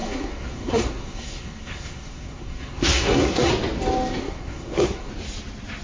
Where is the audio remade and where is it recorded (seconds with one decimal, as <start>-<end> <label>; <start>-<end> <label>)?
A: 0.0-3.5 remade; 3.5-4.2 recorded; 4.2-5.1 remade; 5.1-5.8 recorded